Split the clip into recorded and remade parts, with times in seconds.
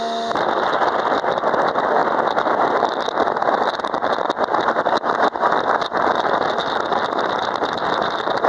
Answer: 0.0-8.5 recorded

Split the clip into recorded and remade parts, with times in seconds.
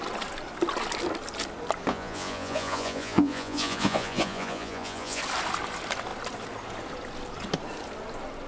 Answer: 0.0-1.9 recorded; 1.9-5.2 remade; 5.2-8.5 recorded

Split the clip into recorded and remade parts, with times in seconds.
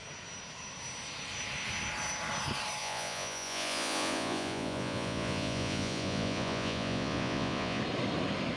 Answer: 0.0-2.8 recorded; 2.8-7.8 remade; 7.8-8.6 recorded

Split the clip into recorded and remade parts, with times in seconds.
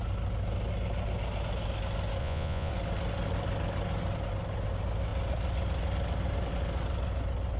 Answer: 0.0-2.2 recorded; 2.2-2.7 remade; 2.7-7.6 recorded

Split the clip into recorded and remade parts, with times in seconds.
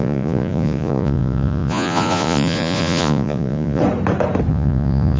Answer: 0.0-3.8 remade; 3.8-4.5 recorded; 4.5-5.2 remade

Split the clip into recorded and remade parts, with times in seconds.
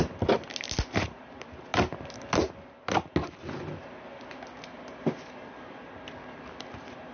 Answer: 0.0-7.1 recorded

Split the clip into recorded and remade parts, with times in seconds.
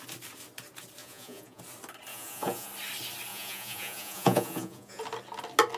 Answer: 0.0-1.0 recorded; 1.0-1.6 remade; 1.6-2.1 recorded; 2.1-2.7 remade; 2.7-3.3 recorded; 3.3-5.0 remade; 5.0-5.8 recorded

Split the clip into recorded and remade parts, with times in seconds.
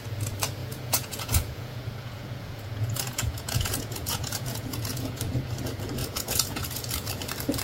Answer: 0.0-0.6 recorded; 0.6-5.2 remade; 5.2-6.0 recorded; 6.0-7.1 remade; 7.1-7.6 recorded